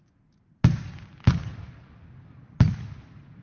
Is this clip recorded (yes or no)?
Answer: yes